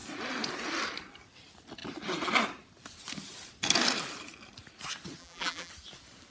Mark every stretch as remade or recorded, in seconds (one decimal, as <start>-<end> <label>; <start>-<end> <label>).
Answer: 0.0-5.2 recorded; 5.2-5.7 remade; 5.7-6.3 recorded